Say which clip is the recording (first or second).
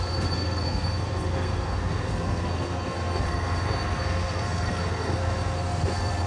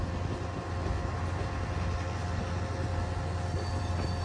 second